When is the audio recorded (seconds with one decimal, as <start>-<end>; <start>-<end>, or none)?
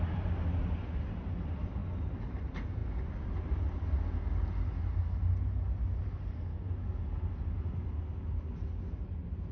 0.0-9.5